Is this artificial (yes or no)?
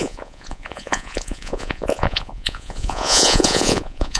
yes